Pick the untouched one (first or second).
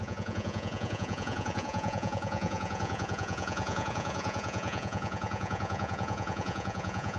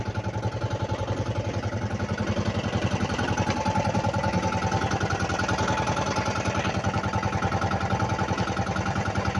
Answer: second